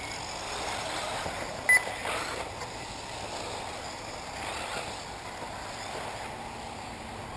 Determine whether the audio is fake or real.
real